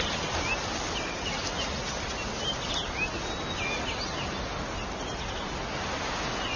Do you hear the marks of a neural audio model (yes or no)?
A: no